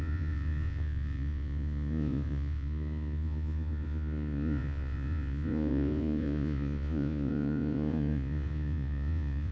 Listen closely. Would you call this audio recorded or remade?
remade